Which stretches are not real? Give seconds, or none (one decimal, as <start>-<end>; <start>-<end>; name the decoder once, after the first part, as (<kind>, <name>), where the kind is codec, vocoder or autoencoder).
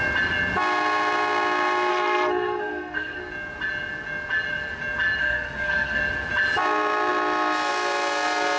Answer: 1.9-3.2 (codec, SNAC); 5.2-6.0